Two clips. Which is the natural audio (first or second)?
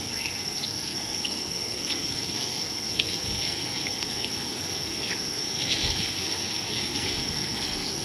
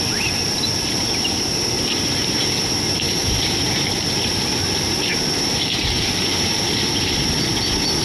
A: second